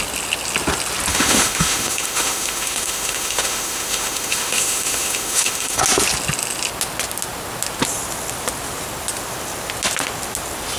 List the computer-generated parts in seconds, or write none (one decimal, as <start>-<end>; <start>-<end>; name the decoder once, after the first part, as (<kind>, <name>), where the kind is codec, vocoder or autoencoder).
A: 1.1-5.8 (autoencoder, DAC-VAE)